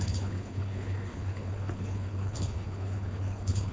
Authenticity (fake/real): fake